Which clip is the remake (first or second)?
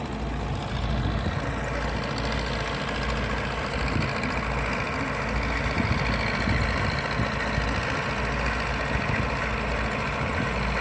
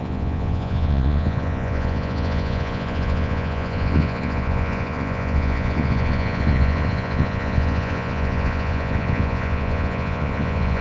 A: second